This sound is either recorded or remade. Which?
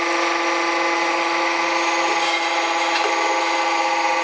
recorded